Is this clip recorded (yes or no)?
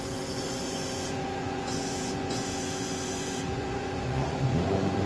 no